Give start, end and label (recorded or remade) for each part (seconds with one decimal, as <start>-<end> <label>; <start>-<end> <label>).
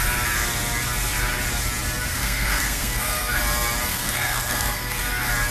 0.0-2.1 recorded; 2.1-3.4 remade; 3.4-3.9 recorded; 3.9-5.0 remade; 5.0-5.5 recorded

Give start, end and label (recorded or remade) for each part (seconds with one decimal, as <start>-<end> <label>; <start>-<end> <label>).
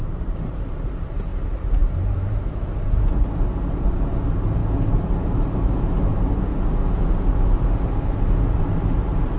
0.0-4.6 remade; 4.6-9.4 recorded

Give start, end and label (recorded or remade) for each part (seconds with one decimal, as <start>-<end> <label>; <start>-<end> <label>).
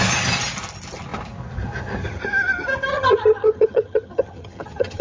0.0-2.9 recorded; 2.9-5.0 remade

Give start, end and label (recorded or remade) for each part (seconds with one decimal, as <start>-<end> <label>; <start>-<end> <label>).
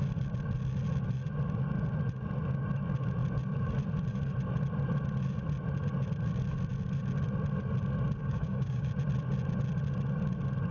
0.0-8.2 recorded; 8.2-8.9 remade; 8.9-10.7 recorded